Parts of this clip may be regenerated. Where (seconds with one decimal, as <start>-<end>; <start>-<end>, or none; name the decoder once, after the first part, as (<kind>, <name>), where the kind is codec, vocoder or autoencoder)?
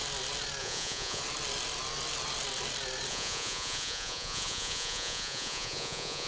0.6-1.2 (vocoder, Vocos); 3.1-6.3